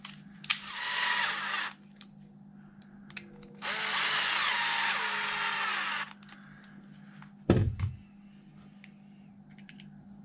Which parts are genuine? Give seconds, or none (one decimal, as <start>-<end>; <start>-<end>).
0.0-10.2